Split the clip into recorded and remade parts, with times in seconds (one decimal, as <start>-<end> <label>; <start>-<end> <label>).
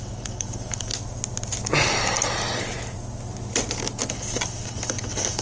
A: 0.0-0.9 remade; 0.9-4.1 recorded; 4.1-5.4 remade